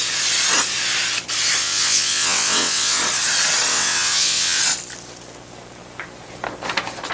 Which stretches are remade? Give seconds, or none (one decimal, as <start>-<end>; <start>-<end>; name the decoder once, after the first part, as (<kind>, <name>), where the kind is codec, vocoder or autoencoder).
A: 1.6-3.0 (vocoder, WaveNeXt); 3.7-4.6